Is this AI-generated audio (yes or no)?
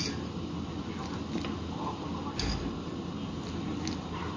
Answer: no